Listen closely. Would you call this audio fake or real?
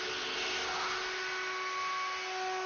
real